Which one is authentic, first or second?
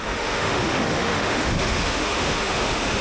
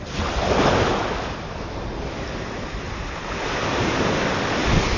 second